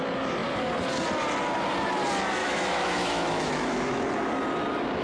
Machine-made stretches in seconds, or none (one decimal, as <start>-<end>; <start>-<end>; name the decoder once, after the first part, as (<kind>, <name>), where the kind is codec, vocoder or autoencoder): 2.4-4.0 (autoencoder, DAC-VAE)